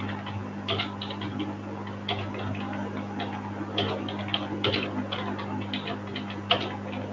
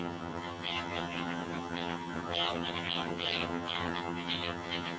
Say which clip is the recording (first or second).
first